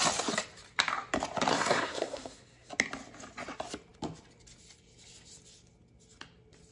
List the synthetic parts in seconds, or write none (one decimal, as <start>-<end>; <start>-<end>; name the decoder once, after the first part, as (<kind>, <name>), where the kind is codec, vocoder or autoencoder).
1.5-2.7 (codec, SNAC)